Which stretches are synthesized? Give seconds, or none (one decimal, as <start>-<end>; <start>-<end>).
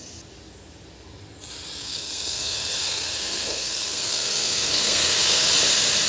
1.8-5.5